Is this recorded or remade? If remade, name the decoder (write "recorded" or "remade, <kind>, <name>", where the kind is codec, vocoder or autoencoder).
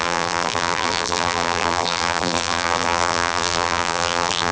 remade, vocoder, BigVGAN v2